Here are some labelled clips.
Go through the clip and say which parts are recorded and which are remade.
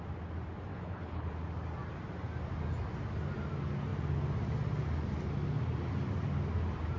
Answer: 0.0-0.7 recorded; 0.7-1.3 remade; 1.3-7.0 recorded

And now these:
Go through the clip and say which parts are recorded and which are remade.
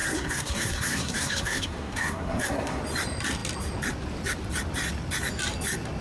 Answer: 0.0-2.8 remade; 2.8-6.0 recorded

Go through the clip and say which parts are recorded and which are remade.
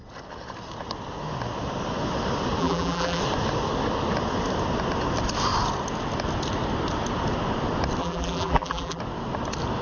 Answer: 0.0-2.6 recorded; 2.6-3.2 remade; 3.2-8.0 recorded; 8.0-9.0 remade; 9.0-9.8 recorded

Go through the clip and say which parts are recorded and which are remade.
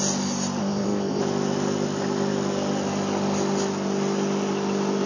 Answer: 0.0-0.6 recorded; 0.6-1.2 remade; 1.2-5.1 recorded